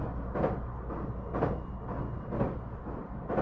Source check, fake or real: real